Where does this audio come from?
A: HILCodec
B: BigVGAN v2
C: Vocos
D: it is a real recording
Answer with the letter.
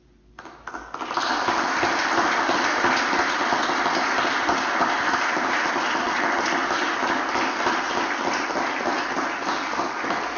D